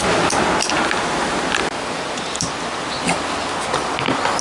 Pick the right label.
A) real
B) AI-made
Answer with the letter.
A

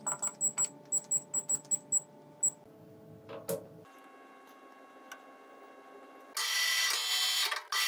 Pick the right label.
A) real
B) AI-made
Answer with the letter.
A